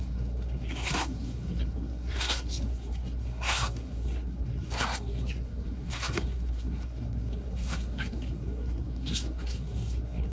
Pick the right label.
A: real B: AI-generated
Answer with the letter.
B